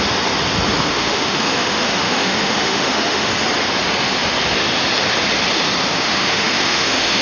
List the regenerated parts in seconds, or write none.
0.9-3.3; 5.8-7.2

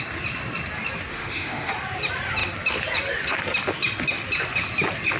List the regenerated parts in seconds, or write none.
1.1-1.7

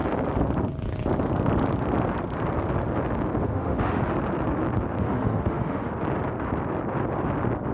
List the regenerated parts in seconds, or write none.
3.4-4.0; 5.0-5.9

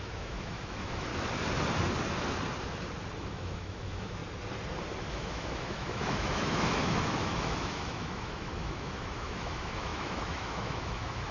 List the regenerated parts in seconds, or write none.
0.0-1.1; 3.2-4.2; 5.1-11.3

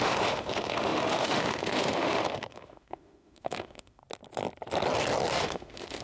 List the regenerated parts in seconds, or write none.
0.0-4.0; 5.3-6.0

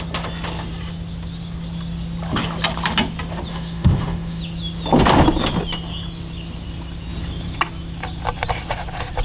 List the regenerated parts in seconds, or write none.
3.5-4.4

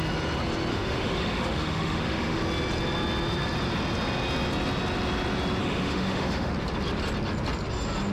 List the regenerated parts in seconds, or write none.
0.7-2.4; 5.6-6.5

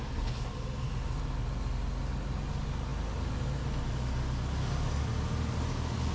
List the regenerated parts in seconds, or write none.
none